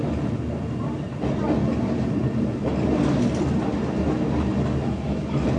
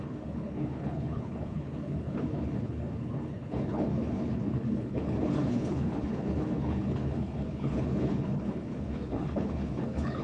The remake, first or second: second